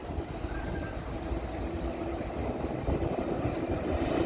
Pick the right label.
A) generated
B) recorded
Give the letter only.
B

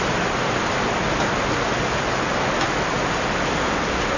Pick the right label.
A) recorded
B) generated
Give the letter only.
A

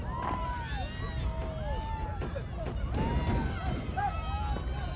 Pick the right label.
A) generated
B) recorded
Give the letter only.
B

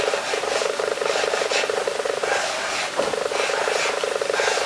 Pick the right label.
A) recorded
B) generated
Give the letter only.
A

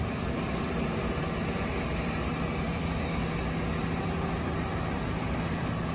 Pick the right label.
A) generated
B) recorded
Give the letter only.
B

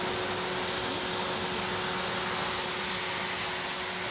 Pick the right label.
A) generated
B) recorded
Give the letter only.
B